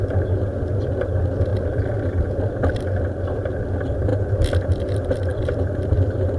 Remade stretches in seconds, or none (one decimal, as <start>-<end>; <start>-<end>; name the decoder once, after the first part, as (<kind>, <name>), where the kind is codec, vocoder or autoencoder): 1.5-2.3 (vocoder, BigVGAN v2); 5.3-5.9